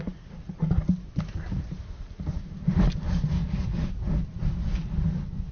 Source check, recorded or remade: recorded